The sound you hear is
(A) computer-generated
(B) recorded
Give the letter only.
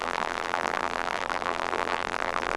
A